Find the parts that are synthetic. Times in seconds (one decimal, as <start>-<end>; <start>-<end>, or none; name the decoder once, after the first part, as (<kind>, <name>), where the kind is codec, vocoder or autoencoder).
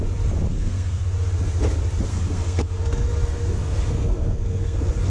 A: 0.5-1.0 (codec, SNAC); 2.1-5.1